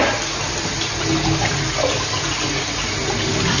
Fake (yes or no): no